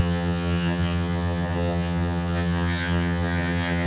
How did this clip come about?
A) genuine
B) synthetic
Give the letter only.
B